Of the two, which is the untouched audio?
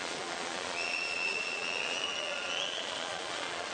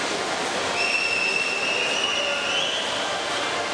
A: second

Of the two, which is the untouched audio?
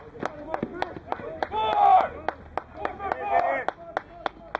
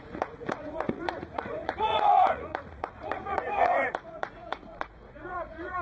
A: first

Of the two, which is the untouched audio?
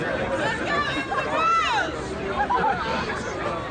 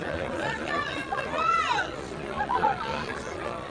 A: first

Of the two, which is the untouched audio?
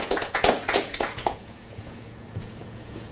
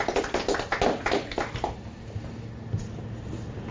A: second